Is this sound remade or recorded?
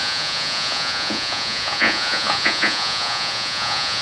remade